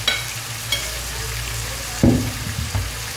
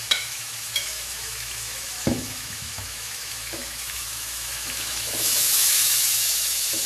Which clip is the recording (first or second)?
first